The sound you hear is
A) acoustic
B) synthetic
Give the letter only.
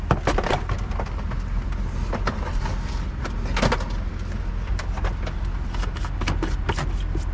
A